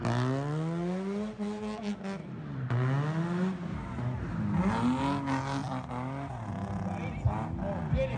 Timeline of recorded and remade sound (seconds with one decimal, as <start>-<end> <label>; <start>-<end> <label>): 0.0-8.2 recorded